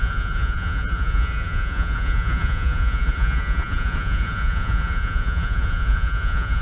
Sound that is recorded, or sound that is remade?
remade